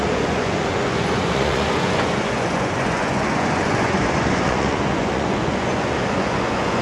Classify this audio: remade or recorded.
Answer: remade